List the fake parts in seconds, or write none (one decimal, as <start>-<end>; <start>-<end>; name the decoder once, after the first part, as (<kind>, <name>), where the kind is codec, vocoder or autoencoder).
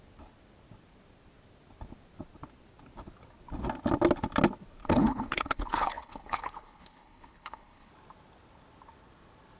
4.8-7.9 (codec, HILCodec)